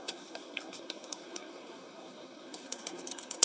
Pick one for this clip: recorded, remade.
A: remade